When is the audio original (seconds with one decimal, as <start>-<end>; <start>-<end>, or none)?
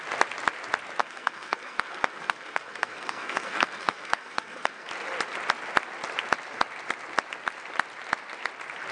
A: 0.0-1.0; 4.9-8.9